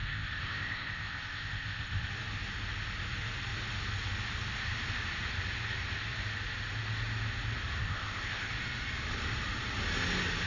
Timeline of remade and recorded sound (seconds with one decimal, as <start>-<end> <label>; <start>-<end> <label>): 0.0-2.1 remade; 2.1-7.8 recorded; 7.8-8.5 remade; 8.5-10.5 recorded

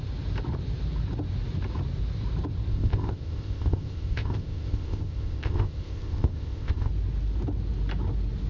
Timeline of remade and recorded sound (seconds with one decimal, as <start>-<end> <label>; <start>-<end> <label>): 0.0-2.7 recorded; 2.7-6.9 remade; 6.9-8.5 recorded